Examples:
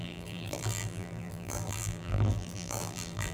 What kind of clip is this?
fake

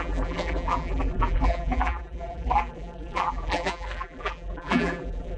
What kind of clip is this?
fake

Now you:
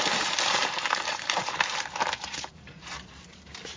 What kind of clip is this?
fake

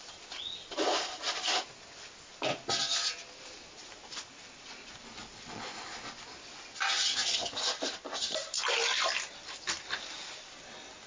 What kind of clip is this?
real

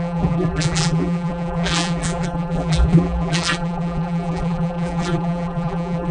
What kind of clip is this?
fake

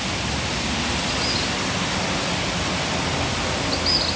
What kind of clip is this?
real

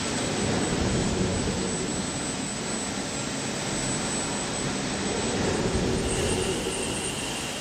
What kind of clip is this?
real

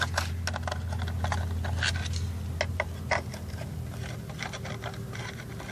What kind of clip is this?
real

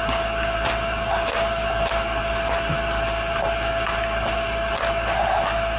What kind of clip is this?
real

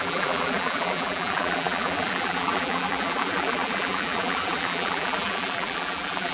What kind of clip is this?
fake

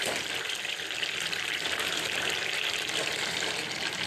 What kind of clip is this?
fake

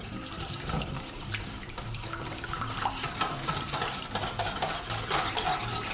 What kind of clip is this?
fake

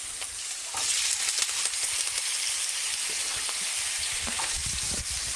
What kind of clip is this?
fake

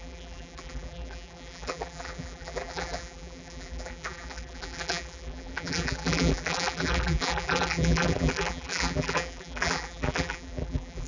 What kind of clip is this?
fake